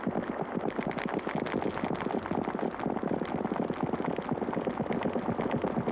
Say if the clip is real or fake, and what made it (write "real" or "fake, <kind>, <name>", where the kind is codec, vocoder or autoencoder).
real